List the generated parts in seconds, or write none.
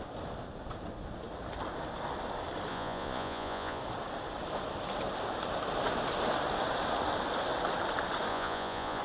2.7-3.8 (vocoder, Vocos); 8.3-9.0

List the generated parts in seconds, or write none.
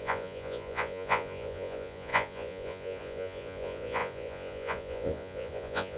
0.0-6.0 (vocoder, Vocos)